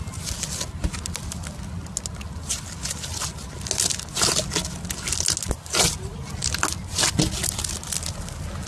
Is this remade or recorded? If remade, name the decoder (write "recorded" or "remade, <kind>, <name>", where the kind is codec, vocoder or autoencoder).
recorded